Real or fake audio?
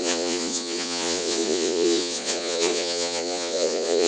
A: fake